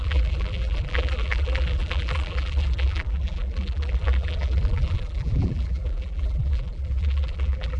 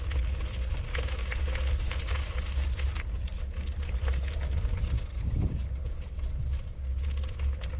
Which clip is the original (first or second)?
second